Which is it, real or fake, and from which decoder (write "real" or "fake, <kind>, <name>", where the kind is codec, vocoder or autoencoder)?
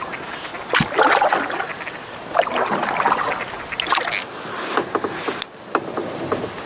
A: real